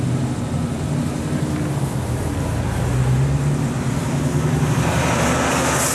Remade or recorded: recorded